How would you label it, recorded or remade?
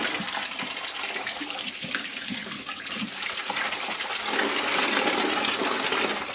recorded